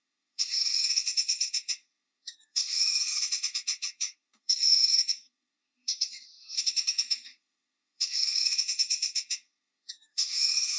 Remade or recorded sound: remade